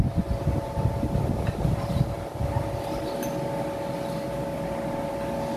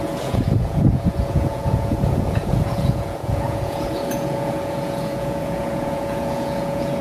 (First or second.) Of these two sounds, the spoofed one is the second